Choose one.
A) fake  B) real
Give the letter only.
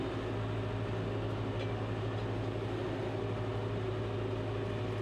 B